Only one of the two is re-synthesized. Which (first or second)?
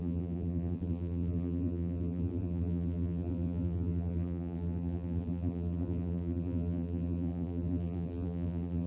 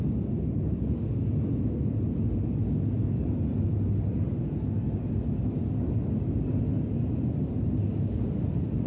first